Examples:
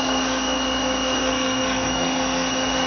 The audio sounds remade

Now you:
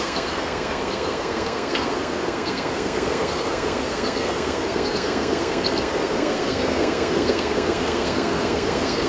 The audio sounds remade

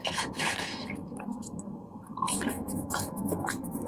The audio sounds remade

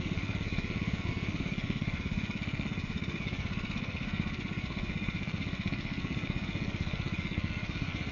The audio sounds remade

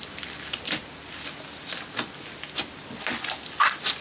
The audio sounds recorded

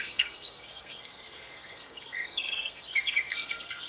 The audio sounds remade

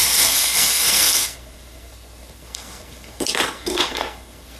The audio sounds remade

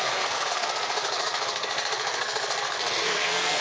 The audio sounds remade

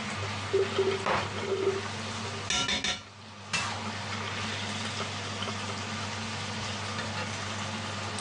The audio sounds recorded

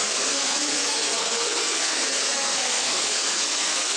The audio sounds remade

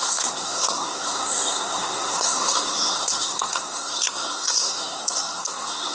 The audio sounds remade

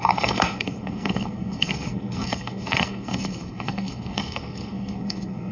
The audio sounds remade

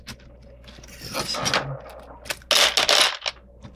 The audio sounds recorded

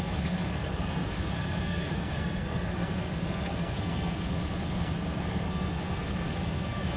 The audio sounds remade